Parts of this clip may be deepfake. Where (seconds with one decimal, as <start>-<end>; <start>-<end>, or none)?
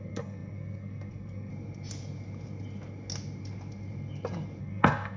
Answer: 0.0-1.5; 4.6-5.2